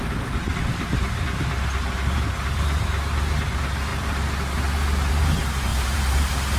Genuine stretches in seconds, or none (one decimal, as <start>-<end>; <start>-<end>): 0.0-0.5; 1.0-5.7